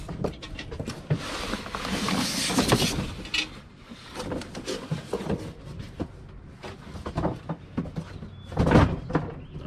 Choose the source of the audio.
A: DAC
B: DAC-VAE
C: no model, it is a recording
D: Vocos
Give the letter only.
C